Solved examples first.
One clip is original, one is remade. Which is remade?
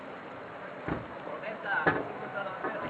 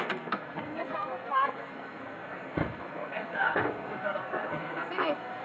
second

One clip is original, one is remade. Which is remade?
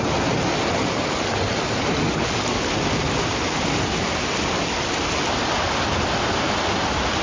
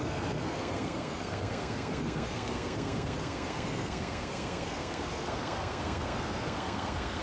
second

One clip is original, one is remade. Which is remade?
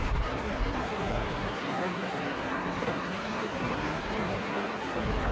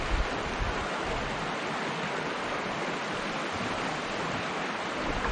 first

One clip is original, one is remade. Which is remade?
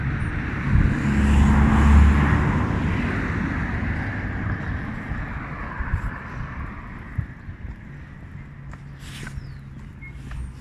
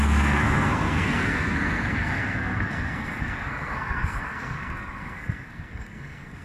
second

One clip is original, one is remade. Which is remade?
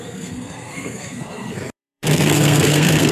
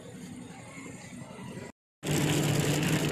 first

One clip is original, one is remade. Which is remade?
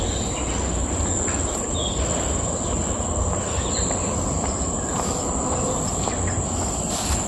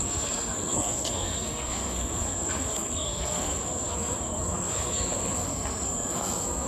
second